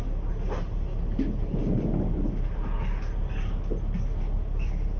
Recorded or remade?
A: recorded